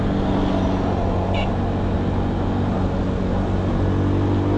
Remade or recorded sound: recorded